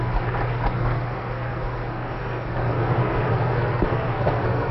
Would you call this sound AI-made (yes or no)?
yes